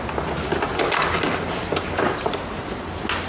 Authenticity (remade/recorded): recorded